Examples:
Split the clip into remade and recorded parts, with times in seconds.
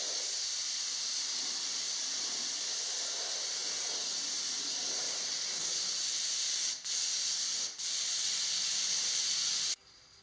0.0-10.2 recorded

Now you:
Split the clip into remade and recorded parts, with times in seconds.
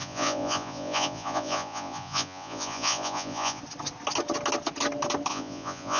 0.0-3.6 remade; 3.6-5.3 recorded; 5.3-6.0 remade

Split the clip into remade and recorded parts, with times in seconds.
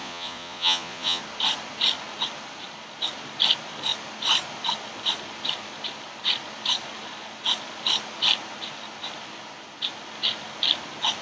0.0-1.2 remade; 1.2-11.2 recorded